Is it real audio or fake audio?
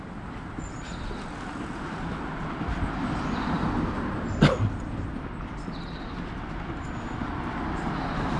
real